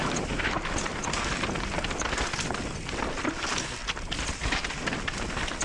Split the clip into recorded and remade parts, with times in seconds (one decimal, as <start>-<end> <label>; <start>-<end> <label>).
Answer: 0.0-0.9 remade; 0.9-5.6 recorded